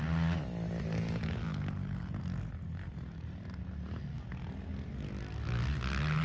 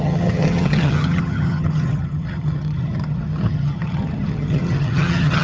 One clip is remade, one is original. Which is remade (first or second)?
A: second